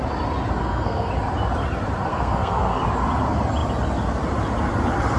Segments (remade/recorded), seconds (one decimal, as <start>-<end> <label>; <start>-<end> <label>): 0.0-0.6 recorded; 0.6-1.1 remade; 1.1-2.1 recorded; 2.1-2.8 remade; 2.8-5.2 recorded